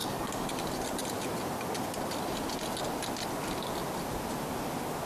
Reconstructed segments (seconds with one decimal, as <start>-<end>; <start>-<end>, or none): 0.0-1.3